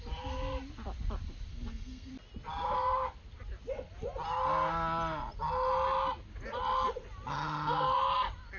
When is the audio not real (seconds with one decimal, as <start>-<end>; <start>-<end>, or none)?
1.5-2.1